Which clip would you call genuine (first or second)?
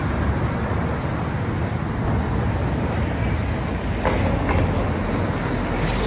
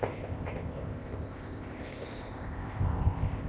first